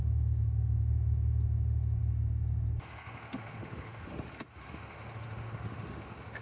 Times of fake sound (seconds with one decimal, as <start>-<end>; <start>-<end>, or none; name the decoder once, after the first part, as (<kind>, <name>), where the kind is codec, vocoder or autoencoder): 0.0-6.4 (autoencoder, DAC-VAE)